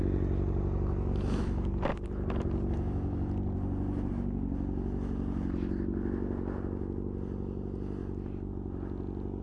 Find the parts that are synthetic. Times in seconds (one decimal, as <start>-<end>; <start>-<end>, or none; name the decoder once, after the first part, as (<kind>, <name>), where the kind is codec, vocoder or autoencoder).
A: 1.9-4.1 (vocoder, BigVGAN v2); 8.0-8.5